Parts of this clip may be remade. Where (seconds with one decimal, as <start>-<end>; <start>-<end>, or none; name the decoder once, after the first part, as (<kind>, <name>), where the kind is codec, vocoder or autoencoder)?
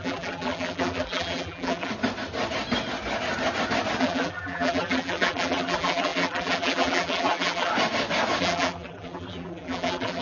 0.0-1.9 (vocoder, BigVGAN v2); 4.0-7.7; 8.4-10.2